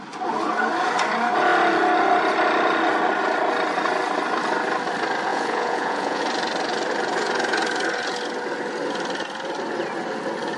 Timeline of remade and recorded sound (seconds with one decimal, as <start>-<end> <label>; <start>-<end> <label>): 0.0-5.3 recorded; 5.3-6.2 remade; 6.2-10.6 recorded